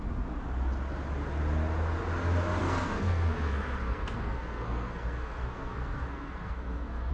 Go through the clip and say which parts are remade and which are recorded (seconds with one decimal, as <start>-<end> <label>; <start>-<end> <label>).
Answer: 0.0-2.6 recorded; 2.6-7.1 remade